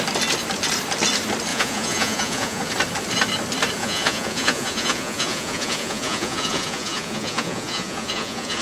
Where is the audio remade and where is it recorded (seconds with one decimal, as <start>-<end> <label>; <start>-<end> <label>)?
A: 0.0-1.5 recorded; 1.5-2.7 remade; 2.7-3.8 recorded; 3.8-8.6 remade